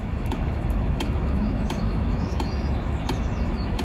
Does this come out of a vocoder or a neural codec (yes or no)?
yes